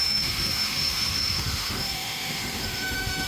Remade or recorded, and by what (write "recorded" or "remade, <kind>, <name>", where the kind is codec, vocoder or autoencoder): remade, autoencoder, DAC-VAE